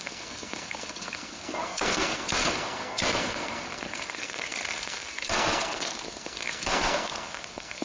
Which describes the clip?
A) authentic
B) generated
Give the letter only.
B